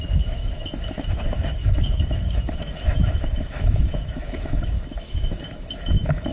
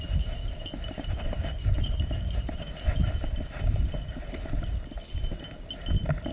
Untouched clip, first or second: second